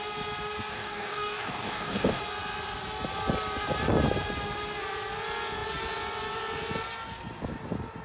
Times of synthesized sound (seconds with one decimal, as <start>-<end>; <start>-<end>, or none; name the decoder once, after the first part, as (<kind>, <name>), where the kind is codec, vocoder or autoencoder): 0.7-2.2 (codec, DAC)